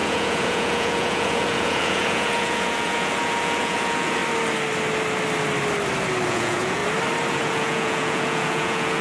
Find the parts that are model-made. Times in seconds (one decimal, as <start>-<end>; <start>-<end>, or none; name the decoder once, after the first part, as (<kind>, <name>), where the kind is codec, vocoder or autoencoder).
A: 0.0-4.2 (vocoder, Vocos); 6.3-6.8; 7.3-9.0